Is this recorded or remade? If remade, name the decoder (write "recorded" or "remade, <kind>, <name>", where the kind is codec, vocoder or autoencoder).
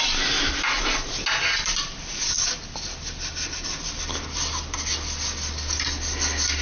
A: recorded